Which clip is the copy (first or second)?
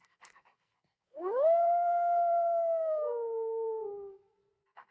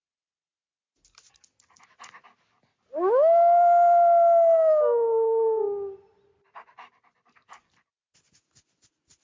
first